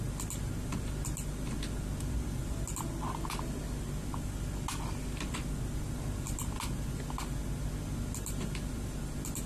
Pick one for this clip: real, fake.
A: real